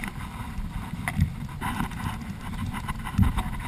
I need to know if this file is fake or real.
real